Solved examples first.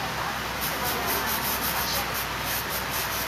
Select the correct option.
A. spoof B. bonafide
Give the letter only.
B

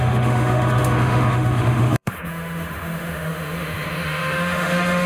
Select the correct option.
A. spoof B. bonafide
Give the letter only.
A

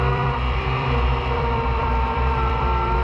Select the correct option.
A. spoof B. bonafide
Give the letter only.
A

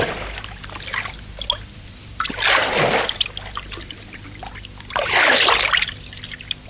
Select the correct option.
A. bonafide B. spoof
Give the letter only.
A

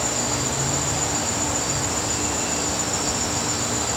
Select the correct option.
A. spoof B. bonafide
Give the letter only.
B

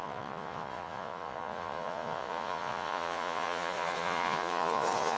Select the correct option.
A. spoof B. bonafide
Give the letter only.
A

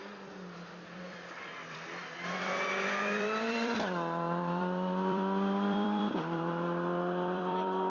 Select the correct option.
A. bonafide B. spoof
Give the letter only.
B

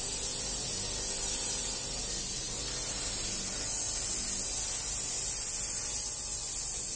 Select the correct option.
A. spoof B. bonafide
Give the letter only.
B